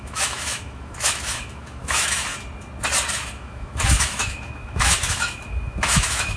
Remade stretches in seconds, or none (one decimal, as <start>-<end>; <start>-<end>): 0.0-2.3; 3.1-6.4